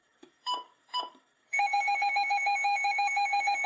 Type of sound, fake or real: fake